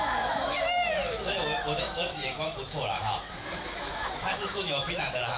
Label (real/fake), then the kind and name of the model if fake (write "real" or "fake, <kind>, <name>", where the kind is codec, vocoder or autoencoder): fake, autoencoder, DAC-VAE